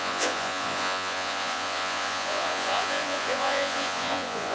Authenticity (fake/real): fake